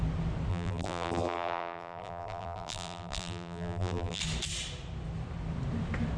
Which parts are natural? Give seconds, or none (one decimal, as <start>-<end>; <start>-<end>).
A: 0.0-0.5; 4.2-6.2